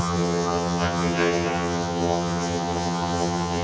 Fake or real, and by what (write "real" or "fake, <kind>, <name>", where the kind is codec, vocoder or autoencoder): fake, vocoder, HiFi-GAN